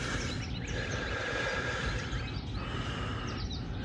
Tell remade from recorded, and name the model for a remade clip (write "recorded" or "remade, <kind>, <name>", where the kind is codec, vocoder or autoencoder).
recorded